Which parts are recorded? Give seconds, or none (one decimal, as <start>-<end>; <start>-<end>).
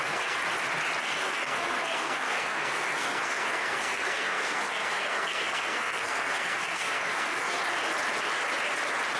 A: 0.4-1.0; 7.6-9.2